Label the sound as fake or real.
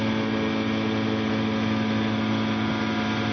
real